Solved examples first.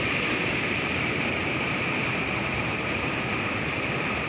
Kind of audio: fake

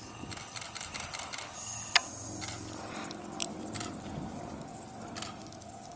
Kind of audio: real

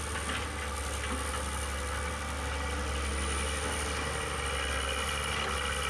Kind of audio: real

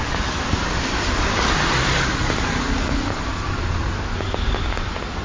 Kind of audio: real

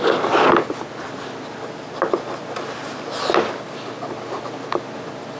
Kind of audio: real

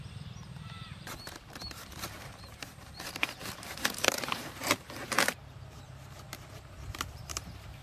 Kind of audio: fake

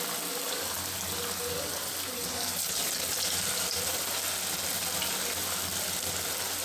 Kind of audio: real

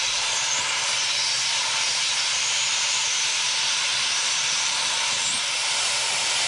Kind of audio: fake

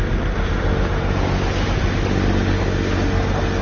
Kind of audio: real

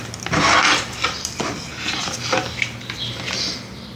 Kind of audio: fake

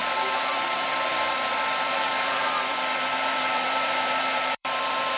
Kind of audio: fake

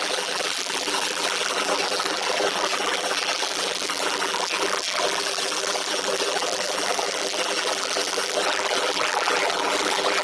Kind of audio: fake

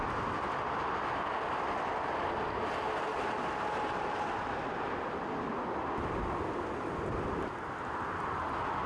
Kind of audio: real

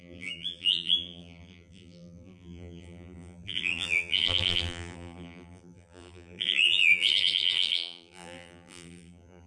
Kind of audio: fake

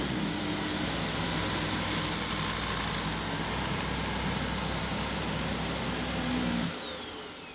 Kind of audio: real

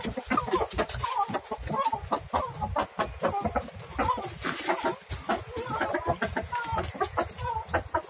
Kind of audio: real